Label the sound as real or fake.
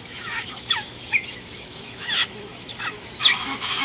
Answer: fake